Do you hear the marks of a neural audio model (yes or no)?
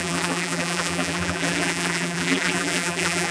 yes